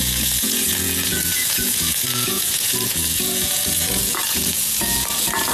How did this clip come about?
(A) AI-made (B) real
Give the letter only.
A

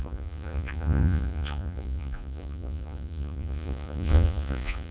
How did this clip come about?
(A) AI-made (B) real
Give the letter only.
A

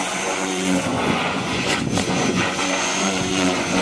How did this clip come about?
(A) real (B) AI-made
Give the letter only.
B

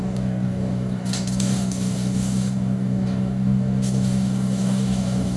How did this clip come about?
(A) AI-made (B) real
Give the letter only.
A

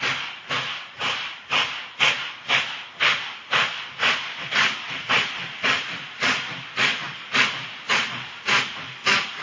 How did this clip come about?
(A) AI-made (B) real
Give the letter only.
A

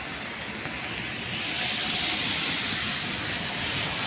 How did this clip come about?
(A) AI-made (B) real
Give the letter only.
B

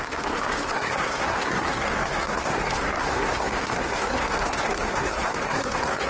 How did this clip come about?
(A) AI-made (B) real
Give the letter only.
A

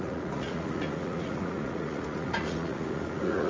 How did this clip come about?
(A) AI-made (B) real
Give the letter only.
A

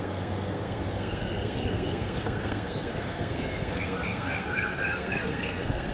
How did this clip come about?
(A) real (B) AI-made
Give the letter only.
B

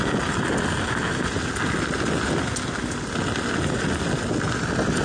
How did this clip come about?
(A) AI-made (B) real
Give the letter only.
B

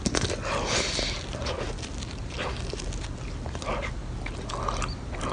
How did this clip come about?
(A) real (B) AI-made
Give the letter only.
A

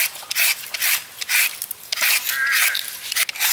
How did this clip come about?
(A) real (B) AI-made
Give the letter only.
A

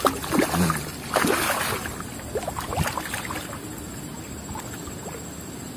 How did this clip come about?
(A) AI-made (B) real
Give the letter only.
B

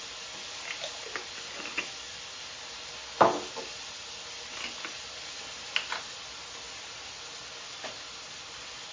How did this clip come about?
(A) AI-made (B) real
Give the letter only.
B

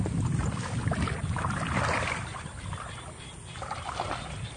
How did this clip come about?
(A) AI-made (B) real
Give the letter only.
B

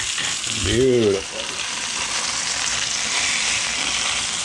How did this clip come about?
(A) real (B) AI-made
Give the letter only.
A